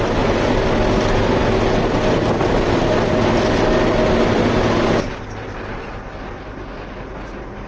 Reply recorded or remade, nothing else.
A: recorded